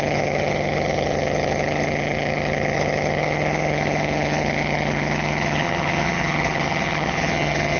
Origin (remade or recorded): remade